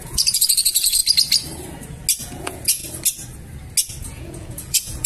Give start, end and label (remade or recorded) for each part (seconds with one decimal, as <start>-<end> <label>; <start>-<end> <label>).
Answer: 0.0-1.0 remade; 1.0-2.2 recorded; 2.2-2.8 remade; 2.8-4.0 recorded; 4.0-5.1 remade